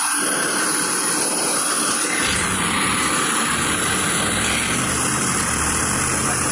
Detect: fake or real real